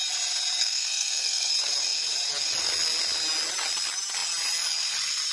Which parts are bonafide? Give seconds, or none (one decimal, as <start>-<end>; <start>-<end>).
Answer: 0.0-0.6; 1.5-5.3